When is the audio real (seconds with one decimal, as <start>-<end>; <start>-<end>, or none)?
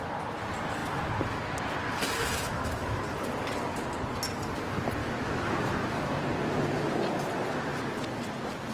0.0-2.5; 3.0-5.0; 6.2-8.7